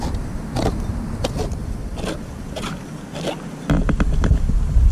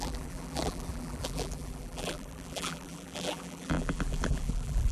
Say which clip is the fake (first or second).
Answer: second